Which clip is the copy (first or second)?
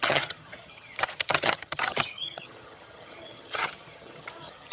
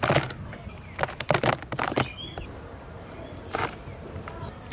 first